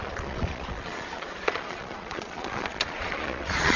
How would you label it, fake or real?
fake